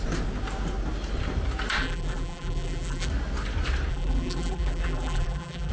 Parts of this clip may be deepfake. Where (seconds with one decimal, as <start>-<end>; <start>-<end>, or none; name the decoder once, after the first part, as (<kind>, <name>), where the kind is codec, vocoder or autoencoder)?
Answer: 1.8-3.1 (vocoder, BigVGAN v2); 3.9-5.7